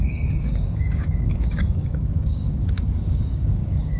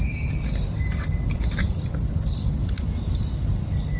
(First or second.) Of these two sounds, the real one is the second